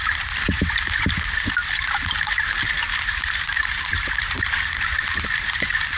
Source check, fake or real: fake